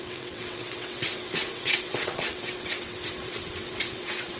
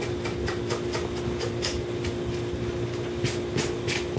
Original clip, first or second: second